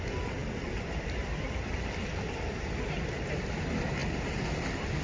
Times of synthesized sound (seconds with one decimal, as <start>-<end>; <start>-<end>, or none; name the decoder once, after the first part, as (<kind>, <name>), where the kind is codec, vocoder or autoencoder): 0.4-1.7 (vocoder, BigVGAN v2)